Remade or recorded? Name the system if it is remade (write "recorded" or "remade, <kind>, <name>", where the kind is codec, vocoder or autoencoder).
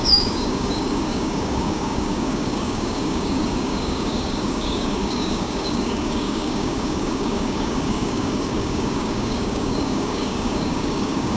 remade, codec, DAC